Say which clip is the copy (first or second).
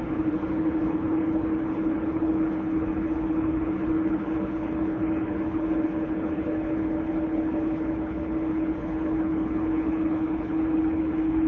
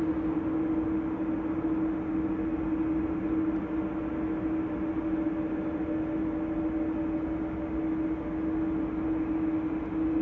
first